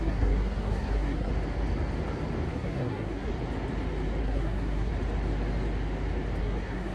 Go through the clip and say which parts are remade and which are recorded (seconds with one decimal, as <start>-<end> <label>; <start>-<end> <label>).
0.0-1.3 remade; 1.3-2.5 recorded; 2.5-3.3 remade; 3.3-4.2 recorded; 4.2-4.9 remade; 4.9-6.4 recorded; 6.4-6.9 remade